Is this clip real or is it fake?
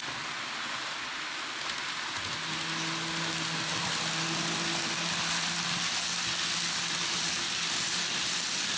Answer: real